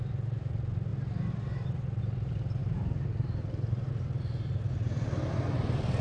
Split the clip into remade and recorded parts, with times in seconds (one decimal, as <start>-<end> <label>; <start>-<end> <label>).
0.0-2.6 recorded; 2.6-3.9 remade; 3.9-6.0 recorded

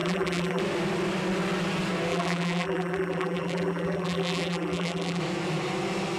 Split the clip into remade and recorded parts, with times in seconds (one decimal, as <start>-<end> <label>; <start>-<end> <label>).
0.0-0.6 remade; 0.6-2.1 recorded; 2.1-5.2 remade; 5.2-6.2 recorded

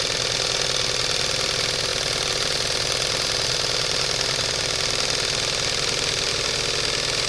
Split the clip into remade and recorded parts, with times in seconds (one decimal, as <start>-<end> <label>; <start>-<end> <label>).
0.0-7.3 recorded

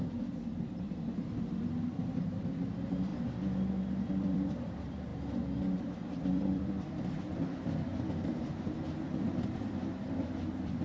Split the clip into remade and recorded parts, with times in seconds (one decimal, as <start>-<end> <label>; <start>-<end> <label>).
0.0-3.1 remade; 3.1-4.1 recorded; 4.1-5.1 remade; 5.1-5.8 recorded; 5.8-7.9 remade; 7.9-9.0 recorded; 9.0-10.8 remade

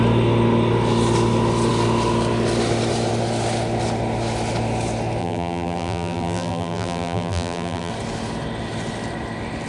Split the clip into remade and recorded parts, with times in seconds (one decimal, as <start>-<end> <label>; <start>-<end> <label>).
0.0-5.2 recorded; 5.2-7.9 remade; 7.9-9.7 recorded

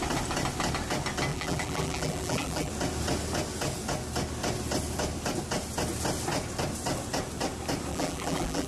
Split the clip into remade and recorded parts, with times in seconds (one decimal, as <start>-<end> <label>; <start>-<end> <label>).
0.0-1.3 recorded; 1.3-2.7 remade; 2.7-7.9 recorded; 7.9-8.7 remade

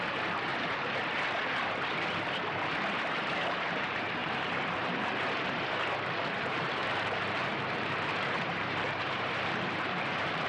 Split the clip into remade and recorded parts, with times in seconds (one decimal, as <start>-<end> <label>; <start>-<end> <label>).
0.0-0.5 remade; 0.5-3.7 recorded; 3.7-6.8 remade; 6.8-7.4 recorded; 7.4-10.5 remade